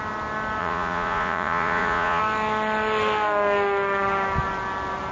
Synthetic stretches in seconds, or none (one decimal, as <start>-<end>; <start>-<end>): 0.6-2.2